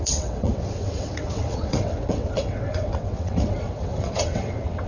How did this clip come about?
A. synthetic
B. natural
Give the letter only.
A